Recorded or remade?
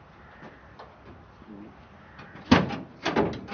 recorded